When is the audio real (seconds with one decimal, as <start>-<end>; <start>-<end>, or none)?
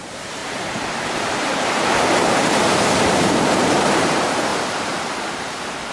4.5-5.9